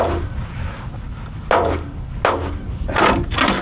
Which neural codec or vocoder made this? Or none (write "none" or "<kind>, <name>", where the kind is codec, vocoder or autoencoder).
none